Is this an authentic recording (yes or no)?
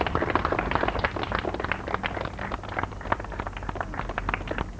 yes